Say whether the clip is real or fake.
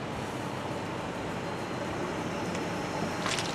fake